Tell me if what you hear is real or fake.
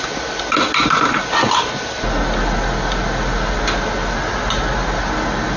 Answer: real